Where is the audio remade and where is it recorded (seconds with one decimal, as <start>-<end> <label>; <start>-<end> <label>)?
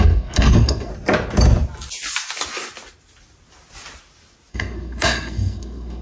0.0-0.9 remade; 0.9-4.5 recorded; 4.5-6.0 remade